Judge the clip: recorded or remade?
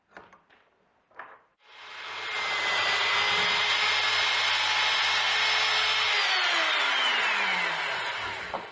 recorded